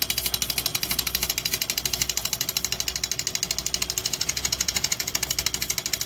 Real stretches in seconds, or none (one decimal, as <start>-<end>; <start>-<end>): 0.0-4.0; 5.1-6.1